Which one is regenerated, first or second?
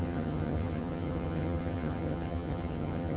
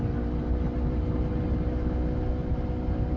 first